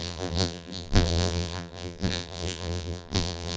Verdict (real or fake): fake